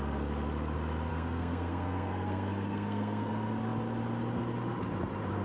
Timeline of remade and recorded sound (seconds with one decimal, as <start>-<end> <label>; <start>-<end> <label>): 0.0-1.1 recorded; 1.1-3.3 remade; 3.3-5.4 recorded